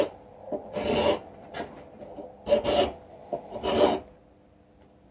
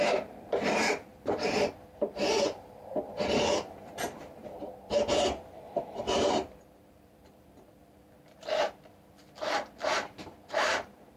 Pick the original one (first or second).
first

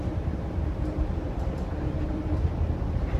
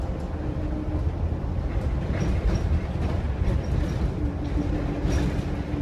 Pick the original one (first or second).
second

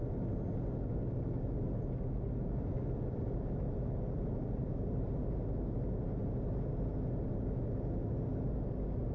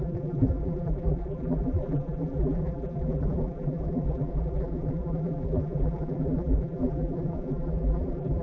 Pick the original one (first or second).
first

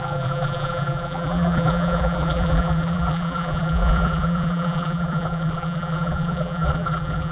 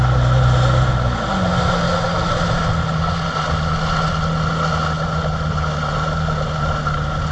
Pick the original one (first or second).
second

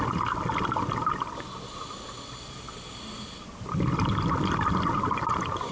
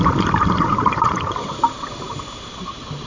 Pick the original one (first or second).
first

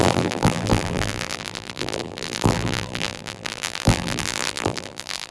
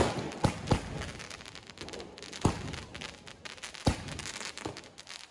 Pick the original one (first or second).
second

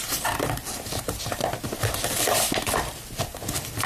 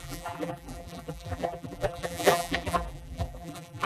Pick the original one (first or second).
first